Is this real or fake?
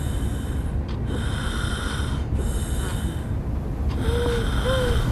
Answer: real